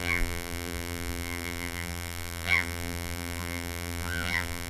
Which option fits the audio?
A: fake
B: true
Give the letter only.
A